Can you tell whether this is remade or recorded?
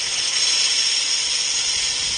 recorded